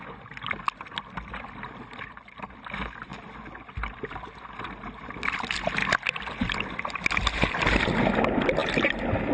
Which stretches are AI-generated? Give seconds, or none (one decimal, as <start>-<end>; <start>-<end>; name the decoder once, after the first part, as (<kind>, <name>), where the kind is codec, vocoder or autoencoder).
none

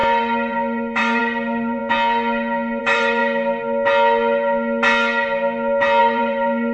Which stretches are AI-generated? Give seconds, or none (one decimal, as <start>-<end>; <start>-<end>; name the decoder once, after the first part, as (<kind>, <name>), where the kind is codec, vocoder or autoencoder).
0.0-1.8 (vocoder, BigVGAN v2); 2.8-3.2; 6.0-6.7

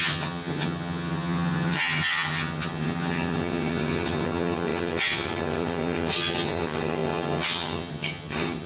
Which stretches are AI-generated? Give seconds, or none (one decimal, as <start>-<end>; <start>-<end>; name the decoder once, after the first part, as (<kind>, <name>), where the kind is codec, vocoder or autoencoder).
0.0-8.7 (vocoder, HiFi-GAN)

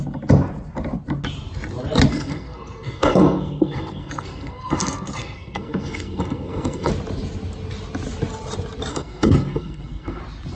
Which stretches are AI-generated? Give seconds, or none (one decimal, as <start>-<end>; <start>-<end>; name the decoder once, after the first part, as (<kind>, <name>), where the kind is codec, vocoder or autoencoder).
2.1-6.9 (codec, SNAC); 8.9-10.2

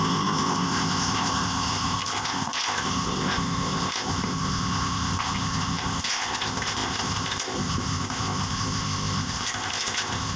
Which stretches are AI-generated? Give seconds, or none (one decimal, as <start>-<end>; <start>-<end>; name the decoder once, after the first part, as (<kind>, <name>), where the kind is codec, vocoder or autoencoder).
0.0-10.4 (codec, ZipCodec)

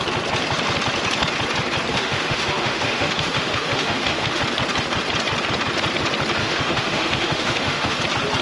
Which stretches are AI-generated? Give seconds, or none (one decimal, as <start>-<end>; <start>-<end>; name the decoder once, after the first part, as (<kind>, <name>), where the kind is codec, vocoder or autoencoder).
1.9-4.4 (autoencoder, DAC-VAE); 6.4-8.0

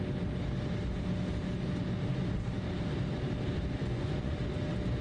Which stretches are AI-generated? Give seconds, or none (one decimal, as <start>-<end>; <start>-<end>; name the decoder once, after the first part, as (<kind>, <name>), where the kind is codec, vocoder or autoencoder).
3.8-4.4 (vocoder, Vocos)